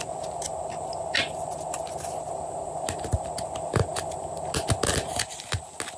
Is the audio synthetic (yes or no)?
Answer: no